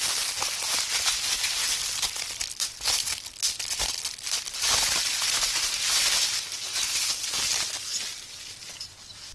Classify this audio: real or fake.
real